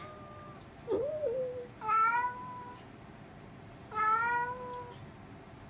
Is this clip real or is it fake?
real